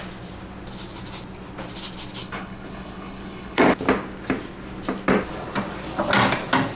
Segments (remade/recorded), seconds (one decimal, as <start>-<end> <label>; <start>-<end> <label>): 0.0-2.2 recorded; 2.2-3.6 remade; 3.6-6.8 recorded